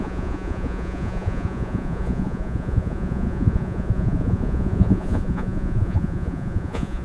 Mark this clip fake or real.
fake